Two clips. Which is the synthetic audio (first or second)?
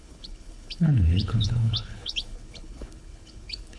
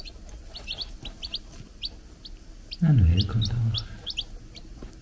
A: first